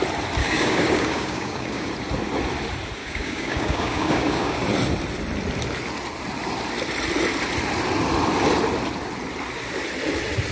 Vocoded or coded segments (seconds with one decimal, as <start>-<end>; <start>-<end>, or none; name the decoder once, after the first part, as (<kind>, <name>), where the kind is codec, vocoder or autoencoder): 0.4-1.9 (codec, DAC); 3.0-4.6

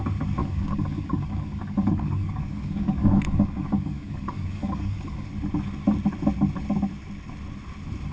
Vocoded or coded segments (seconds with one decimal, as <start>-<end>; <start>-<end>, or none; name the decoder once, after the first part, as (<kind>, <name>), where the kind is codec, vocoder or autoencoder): 0.4-5.3 (codec, DAC)